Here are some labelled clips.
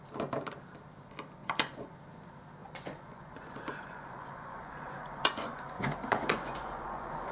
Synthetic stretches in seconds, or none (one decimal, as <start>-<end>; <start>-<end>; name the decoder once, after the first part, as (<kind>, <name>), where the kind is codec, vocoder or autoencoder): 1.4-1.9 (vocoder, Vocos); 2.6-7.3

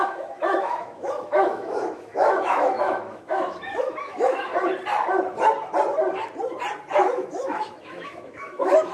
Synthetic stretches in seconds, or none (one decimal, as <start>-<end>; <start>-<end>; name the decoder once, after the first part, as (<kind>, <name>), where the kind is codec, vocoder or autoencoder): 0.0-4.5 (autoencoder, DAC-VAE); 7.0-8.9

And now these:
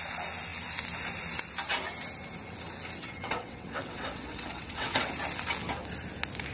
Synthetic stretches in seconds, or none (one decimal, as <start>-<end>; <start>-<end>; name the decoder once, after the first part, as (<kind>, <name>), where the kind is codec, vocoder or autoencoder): 3.0-5.1 (vocoder, WaveNeXt)